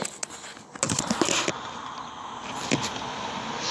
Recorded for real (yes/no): yes